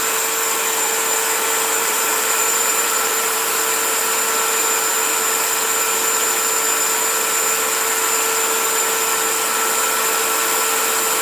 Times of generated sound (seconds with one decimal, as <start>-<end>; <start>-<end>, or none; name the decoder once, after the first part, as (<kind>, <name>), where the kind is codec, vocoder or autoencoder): 1.8-3.6 (vocoder, BigVGAN v2)